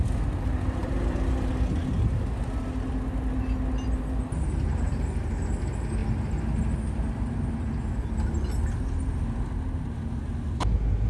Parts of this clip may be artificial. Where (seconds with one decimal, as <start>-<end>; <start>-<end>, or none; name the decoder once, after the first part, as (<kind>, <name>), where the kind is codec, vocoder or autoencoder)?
0.8-1.5 (vocoder, BigVGAN v2)